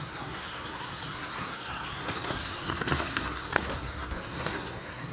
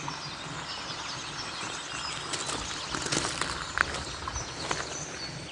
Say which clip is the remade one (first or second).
first